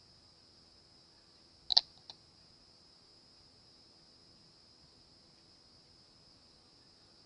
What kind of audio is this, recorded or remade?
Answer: recorded